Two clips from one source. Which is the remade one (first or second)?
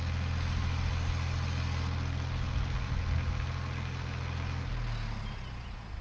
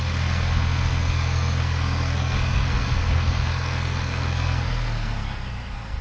second